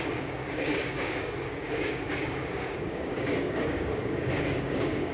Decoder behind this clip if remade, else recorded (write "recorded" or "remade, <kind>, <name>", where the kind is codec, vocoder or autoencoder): remade, codec, DAC